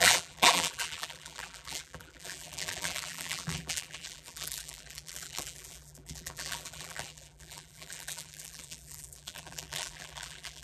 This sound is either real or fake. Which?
fake